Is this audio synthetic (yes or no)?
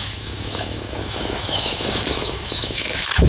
yes